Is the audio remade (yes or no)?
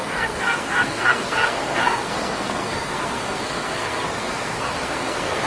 yes